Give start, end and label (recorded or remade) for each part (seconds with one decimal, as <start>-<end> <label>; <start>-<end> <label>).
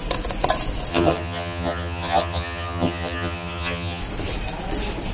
0.0-0.9 recorded; 0.9-4.0 remade; 4.0-5.1 recorded